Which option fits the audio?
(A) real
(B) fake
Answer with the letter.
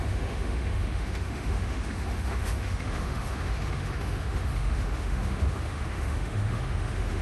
B